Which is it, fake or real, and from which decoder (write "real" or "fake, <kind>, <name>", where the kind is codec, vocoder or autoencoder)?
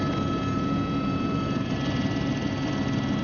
real